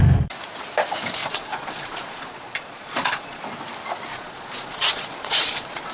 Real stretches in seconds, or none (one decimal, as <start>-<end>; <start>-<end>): 0.0-1.2; 3.4-4.1